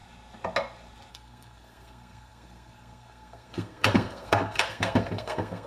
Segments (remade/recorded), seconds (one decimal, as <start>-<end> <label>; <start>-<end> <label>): 0.0-1.1 recorded; 1.1-5.7 remade

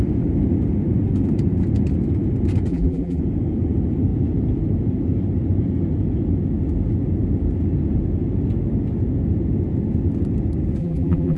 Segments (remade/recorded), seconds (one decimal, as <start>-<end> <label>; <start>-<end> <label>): 0.0-2.7 recorded; 2.7-3.2 remade; 3.2-10.8 recorded; 10.8-11.4 remade